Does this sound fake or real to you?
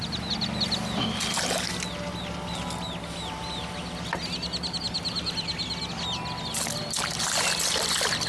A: real